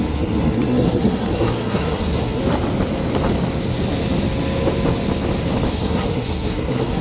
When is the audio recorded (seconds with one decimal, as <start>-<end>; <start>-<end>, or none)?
2.4-5.7